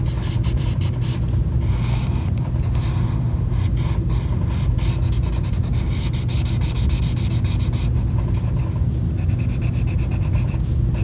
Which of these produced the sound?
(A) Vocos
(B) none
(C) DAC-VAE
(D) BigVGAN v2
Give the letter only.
B